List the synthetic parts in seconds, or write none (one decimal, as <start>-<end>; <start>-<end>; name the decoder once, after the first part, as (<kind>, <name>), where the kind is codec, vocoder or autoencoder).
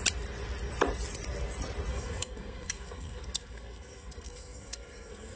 1.9-5.4 (codec, SNAC)